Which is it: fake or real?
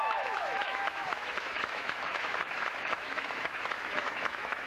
fake